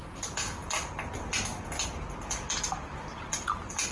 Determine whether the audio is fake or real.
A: real